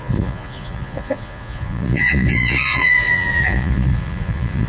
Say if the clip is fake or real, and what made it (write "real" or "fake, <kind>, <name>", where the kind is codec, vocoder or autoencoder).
fake, vocoder, Vocos